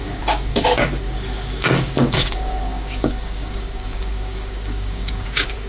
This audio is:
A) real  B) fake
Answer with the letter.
B